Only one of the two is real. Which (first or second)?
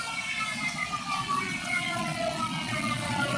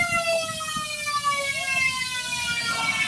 second